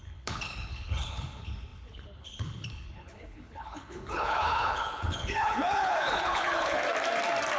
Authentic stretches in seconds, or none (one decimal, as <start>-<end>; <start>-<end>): 6.8-7.6